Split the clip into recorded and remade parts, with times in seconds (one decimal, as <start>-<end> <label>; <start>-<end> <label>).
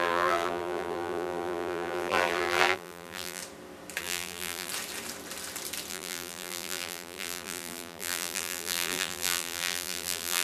0.0-3.4 remade; 3.4-4.0 recorded; 4.0-4.7 remade; 4.7-5.9 recorded; 5.9-10.4 remade